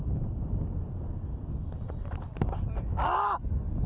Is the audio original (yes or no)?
yes